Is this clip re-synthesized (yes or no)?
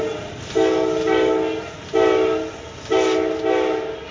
no